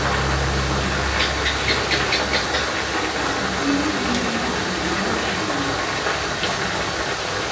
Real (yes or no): yes